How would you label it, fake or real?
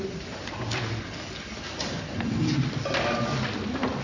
real